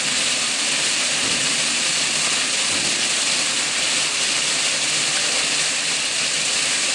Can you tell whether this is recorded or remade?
recorded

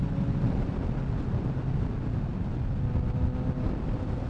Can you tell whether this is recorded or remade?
recorded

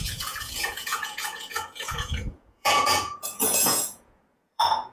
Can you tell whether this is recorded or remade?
remade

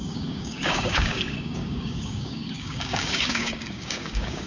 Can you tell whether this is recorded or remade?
remade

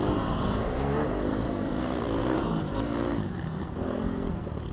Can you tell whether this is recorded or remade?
remade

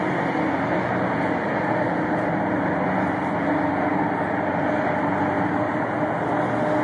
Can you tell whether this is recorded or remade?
recorded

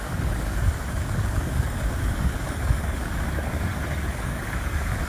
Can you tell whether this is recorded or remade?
remade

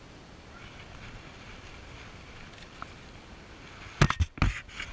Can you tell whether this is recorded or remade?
recorded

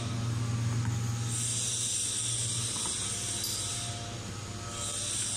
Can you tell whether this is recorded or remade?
recorded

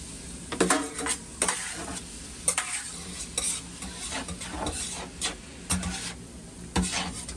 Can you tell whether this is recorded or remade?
recorded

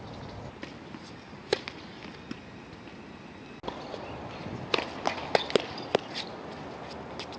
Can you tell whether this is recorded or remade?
recorded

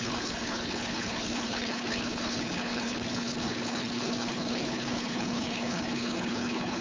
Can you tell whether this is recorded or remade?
remade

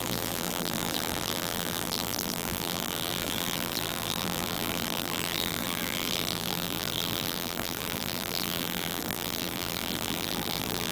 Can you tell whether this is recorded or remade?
remade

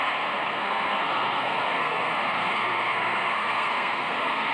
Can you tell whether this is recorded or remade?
remade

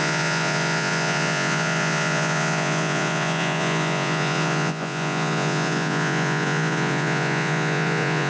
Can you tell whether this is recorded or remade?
remade